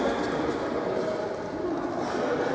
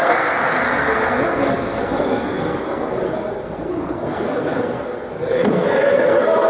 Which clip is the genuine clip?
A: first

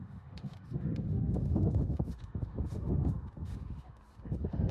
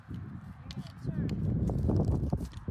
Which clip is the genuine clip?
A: second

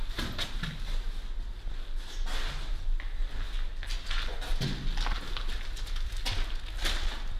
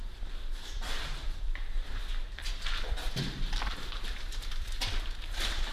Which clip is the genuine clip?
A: first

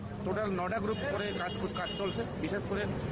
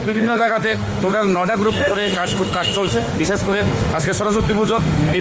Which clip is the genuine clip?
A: first